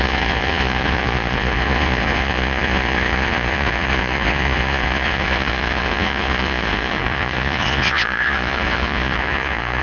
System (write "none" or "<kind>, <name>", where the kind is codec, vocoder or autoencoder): vocoder, Vocos